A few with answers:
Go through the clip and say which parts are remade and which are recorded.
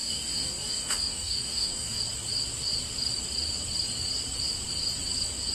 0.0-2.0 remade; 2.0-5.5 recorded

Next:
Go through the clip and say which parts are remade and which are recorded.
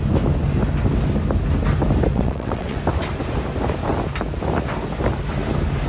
0.0-2.1 recorded; 2.1-2.8 remade; 2.8-5.9 recorded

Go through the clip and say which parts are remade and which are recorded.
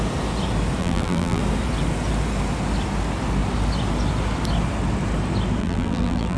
0.0-0.8 recorded; 0.8-1.4 remade; 1.4-5.6 recorded; 5.6-6.4 remade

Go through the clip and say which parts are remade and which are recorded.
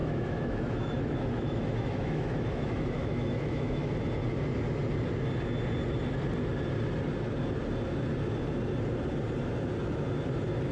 0.0-3.9 remade; 3.9-10.7 recorded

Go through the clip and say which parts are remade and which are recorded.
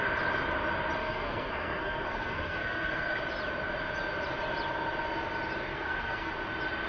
0.0-1.0 recorded; 1.0-3.2 remade; 3.2-5.7 recorded; 5.7-6.3 remade; 6.3-6.9 recorded